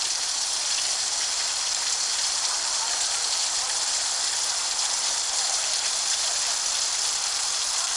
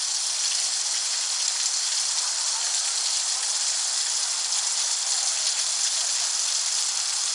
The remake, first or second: first